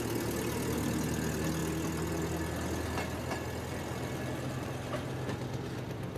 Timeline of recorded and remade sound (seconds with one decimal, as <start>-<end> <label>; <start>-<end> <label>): 0.0-6.2 recorded